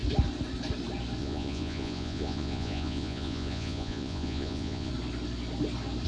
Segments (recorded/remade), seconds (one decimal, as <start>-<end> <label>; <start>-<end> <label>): 0.0-1.2 recorded; 1.2-4.9 remade; 4.9-6.1 recorded